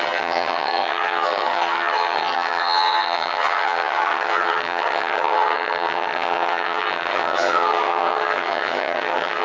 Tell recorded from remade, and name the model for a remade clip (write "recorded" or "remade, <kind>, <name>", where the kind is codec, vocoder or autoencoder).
remade, vocoder, HiFi-GAN